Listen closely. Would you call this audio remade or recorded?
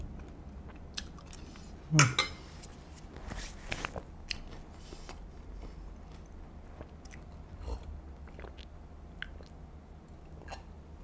recorded